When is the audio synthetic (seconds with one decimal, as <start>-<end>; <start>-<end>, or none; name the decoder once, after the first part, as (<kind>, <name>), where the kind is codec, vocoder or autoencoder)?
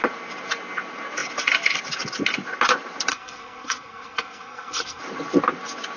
3.1-5.0 (codec, SNAC)